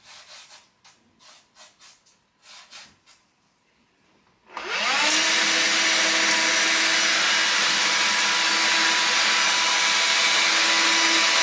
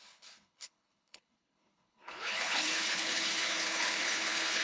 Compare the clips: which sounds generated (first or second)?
second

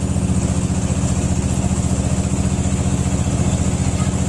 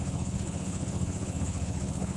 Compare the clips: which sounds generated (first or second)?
second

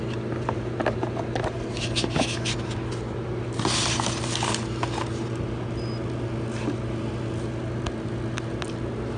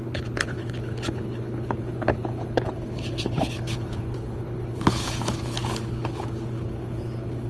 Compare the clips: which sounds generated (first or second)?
second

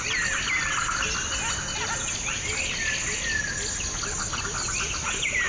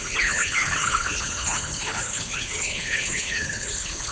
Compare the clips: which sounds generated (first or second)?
second